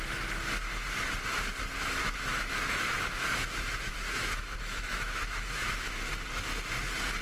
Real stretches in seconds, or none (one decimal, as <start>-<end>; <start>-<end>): 0.0-2.0; 6.1-7.2